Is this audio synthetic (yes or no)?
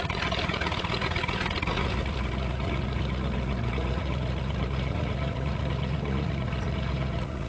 yes